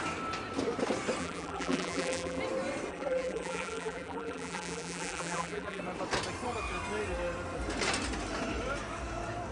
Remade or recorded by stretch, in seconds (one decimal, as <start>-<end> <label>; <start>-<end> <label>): 0.0-1.2 recorded; 1.2-2.4 remade; 2.4-2.9 recorded; 2.9-5.8 remade; 5.8-9.5 recorded